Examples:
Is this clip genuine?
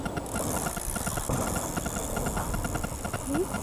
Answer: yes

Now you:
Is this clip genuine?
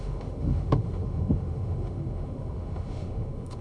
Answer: no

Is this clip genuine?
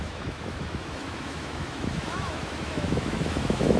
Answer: no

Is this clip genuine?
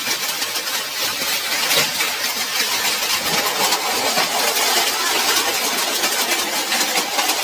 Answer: yes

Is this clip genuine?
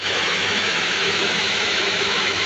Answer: no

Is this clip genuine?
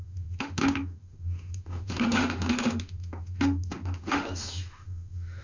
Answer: no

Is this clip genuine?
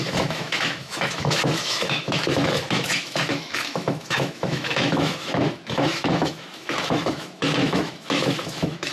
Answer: no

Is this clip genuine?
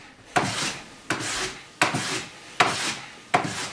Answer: yes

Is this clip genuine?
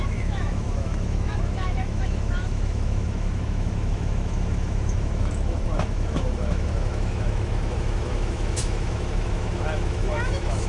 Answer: no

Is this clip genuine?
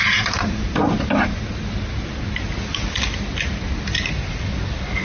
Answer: yes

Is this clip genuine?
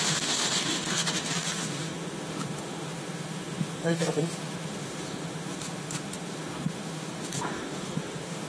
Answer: no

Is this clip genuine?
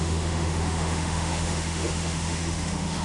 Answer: no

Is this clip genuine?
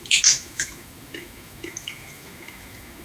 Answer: no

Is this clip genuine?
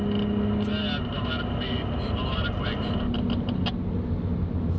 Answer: yes